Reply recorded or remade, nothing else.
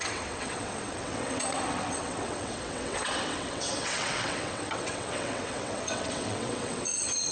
remade